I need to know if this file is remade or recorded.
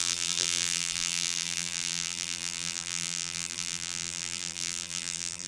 remade